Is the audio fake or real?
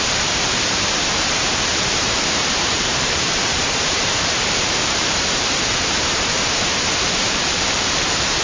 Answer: fake